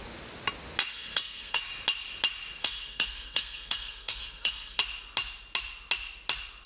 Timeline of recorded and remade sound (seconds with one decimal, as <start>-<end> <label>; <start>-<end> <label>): 0.0-0.9 recorded; 0.9-1.6 remade; 1.6-2.6 recorded; 2.6-4.8 remade; 4.8-6.7 recorded